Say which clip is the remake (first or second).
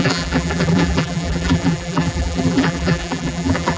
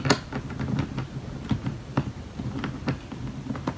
first